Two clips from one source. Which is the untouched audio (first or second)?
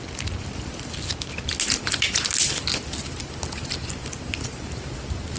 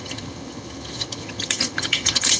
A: first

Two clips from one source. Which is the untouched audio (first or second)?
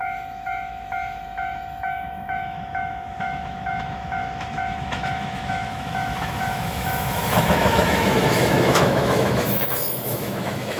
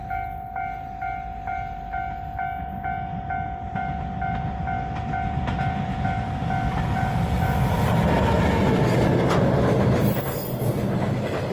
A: second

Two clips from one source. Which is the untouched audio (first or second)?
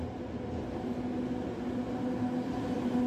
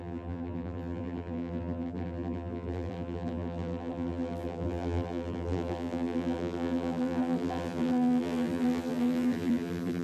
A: first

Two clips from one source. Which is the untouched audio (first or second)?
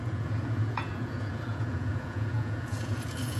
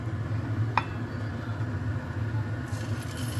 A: second